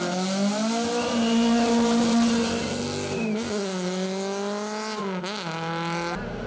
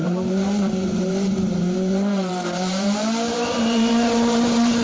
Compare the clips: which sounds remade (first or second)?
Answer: second